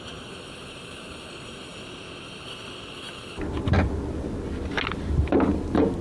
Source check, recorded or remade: recorded